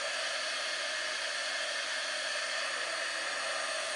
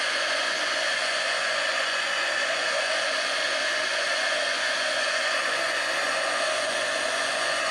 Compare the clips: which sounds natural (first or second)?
first